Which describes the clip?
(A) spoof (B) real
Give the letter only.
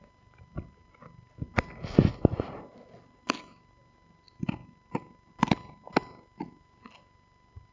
B